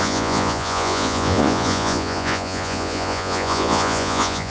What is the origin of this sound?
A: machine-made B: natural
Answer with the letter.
A